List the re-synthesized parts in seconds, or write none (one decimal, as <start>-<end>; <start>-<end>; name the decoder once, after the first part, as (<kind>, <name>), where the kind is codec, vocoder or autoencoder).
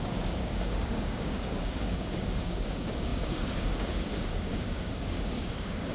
0.0-5.9 (codec, DAC)